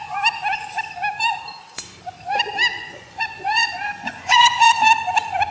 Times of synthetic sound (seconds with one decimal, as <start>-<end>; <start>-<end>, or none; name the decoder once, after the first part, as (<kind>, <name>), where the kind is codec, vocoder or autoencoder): 2.7-4.7 (vocoder, Vocos)